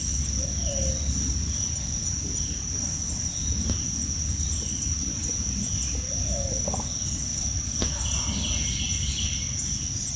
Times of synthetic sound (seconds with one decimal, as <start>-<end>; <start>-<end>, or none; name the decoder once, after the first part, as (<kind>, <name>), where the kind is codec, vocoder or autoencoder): none

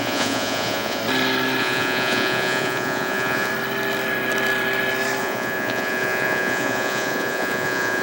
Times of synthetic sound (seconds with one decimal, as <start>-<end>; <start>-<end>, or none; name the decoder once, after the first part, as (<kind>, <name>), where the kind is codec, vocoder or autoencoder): 0.0-1.0 (vocoder, Vocos); 1.6-3.5; 5.2-8.0

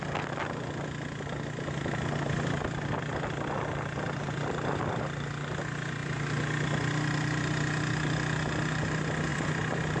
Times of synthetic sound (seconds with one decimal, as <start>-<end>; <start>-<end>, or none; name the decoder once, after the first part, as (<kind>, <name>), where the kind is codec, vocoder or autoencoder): 9.3-10.0 (vocoder, BigVGAN v2)

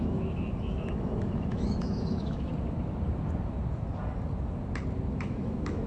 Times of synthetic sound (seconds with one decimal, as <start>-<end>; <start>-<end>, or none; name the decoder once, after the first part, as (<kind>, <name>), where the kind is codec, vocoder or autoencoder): 0.0-2.5 (autoencoder, DAC-VAE); 5.1-5.9